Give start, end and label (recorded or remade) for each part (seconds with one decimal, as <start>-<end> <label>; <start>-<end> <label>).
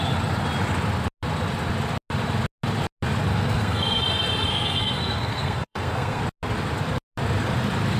0.0-3.3 recorded; 3.3-4.0 remade; 4.0-4.5 recorded; 4.5-6.2 remade; 6.2-8.0 recorded